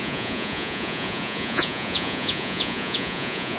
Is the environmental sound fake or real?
fake